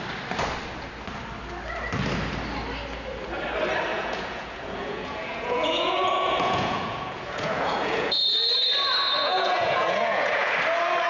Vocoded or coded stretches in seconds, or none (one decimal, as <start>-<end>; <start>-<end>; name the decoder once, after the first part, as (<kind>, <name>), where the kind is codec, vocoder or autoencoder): 3.9-8.5 (vocoder, Vocos); 9.2-10.5